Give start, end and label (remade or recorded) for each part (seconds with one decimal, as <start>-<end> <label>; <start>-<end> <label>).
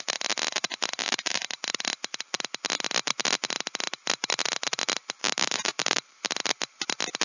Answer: 0.0-1.0 recorded; 1.0-1.6 remade; 1.6-5.2 recorded; 5.2-6.3 remade; 6.3-7.2 recorded